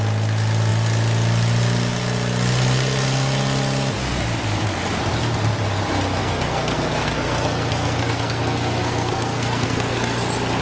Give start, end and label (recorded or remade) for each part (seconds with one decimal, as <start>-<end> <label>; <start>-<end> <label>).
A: 0.0-6.2 recorded; 6.2-10.2 remade; 10.2-10.6 recorded